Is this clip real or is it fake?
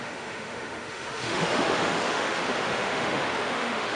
fake